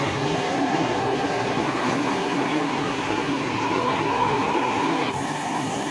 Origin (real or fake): fake